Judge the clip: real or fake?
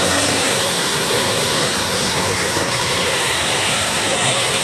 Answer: fake